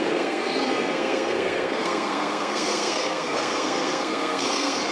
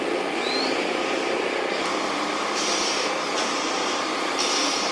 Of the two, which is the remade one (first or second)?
first